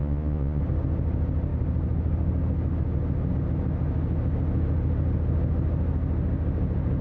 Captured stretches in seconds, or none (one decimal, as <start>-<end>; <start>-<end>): 0.6-7.0